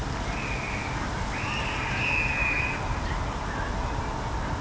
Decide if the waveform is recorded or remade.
recorded